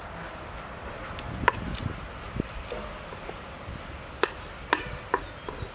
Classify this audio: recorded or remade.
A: recorded